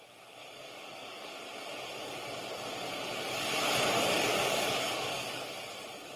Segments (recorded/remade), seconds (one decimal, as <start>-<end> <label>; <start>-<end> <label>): 0.0-0.4 recorded; 0.4-1.3 remade; 1.3-4.3 recorded; 4.3-5.4 remade; 5.4-6.2 recorded